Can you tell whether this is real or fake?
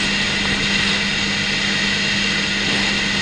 real